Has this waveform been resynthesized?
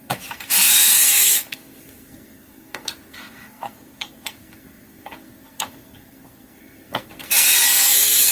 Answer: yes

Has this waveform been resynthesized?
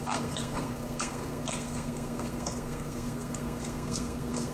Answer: yes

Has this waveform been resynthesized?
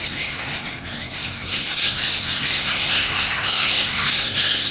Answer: yes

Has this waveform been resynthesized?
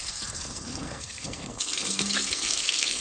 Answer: yes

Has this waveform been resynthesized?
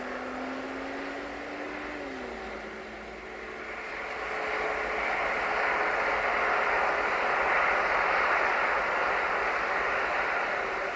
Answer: no